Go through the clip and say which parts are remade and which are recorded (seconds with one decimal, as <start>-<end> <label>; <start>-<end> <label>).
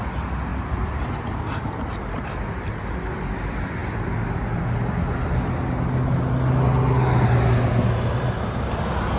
0.0-0.5 recorded; 0.5-2.1 remade; 2.1-9.2 recorded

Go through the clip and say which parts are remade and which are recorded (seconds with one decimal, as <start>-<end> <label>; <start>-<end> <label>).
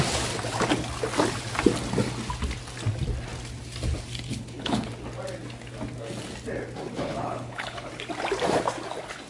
0.0-4.3 recorded; 4.3-4.9 remade; 4.9-7.1 recorded; 7.1-7.9 remade; 7.9-9.3 recorded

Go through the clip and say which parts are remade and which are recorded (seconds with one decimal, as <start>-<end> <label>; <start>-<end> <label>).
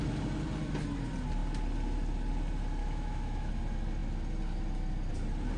0.0-2.8 recorded; 2.8-3.5 remade; 3.5-5.6 recorded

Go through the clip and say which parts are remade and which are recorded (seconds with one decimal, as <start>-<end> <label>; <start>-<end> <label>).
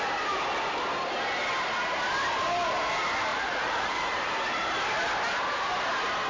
0.0-3.3 recorded; 3.3-4.3 remade; 4.3-6.3 recorded